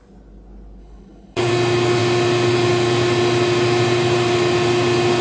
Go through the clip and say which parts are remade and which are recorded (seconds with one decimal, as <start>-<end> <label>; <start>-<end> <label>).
0.0-0.8 recorded; 0.8-1.5 remade; 1.5-5.2 recorded